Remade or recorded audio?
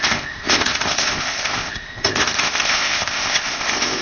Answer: remade